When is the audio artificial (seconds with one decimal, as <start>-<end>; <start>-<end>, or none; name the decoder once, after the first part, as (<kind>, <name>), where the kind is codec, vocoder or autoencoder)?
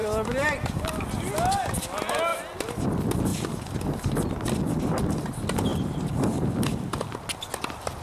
5.7-7.1 (vocoder, BigVGAN v2)